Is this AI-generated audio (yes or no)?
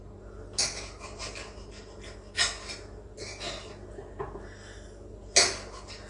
no